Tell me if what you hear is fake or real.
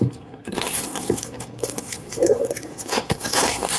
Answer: fake